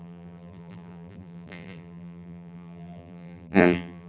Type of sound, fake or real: fake